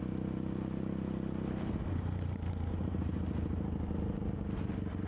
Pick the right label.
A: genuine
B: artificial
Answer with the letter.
A